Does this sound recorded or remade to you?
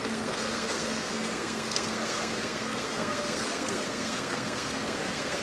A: remade